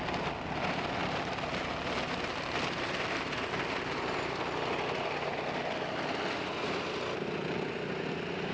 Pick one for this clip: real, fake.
real